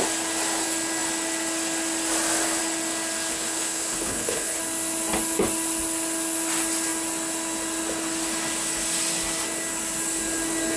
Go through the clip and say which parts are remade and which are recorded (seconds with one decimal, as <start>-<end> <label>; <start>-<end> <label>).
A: 0.0-3.3 recorded; 3.3-4.6 remade; 4.6-10.8 recorded